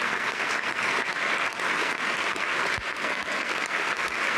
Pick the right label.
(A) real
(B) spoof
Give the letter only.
B